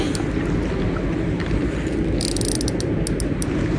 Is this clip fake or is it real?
real